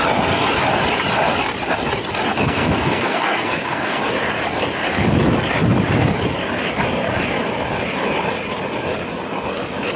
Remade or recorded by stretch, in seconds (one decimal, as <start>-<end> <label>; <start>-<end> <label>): 0.0-2.3 recorded; 2.3-4.0 remade; 4.0-10.0 recorded